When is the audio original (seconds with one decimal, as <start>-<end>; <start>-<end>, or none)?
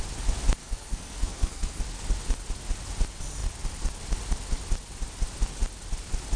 0.0-0.6; 1.8-6.4